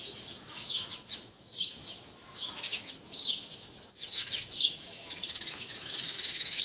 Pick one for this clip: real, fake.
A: fake